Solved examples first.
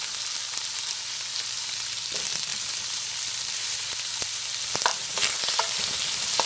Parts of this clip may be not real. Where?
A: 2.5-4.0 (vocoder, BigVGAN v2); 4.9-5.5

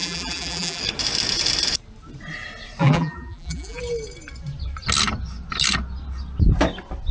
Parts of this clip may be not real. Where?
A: 0.0-0.8 (vocoder, BigVGAN v2); 2.8-3.8